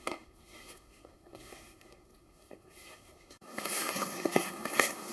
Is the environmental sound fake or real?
fake